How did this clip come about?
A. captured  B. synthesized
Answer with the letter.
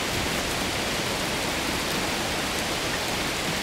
A